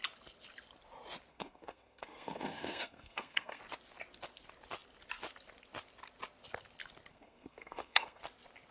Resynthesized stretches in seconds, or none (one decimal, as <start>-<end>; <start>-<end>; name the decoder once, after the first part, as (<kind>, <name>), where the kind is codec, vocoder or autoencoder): 1.3-3.6 (codec, SNAC); 7.1-8.2